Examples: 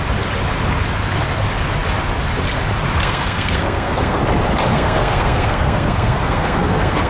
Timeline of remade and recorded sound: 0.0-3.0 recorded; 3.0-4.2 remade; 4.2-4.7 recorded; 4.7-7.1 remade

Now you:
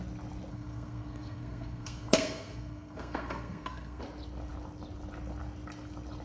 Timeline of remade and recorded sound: 0.0-0.5 recorded; 0.5-4.0 remade; 4.0-6.2 recorded

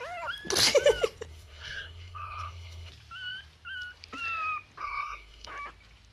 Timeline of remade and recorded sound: 0.0-1.3 recorded; 1.3-2.9 remade; 2.9-4.8 recorded; 4.8-5.5 remade; 5.5-6.1 recorded

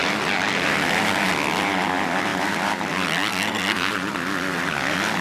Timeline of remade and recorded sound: 0.0-3.3 recorded; 3.3-3.9 remade; 3.9-5.2 recorded

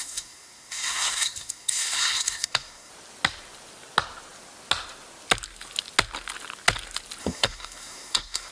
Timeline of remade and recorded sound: 0.0-2.9 remade; 2.9-7.2 recorded; 7.2-8.5 remade

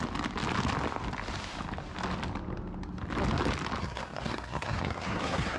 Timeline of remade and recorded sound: 0.0-3.8 recorded; 3.8-5.6 remade